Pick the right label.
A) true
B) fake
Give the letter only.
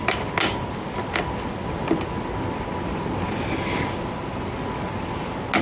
A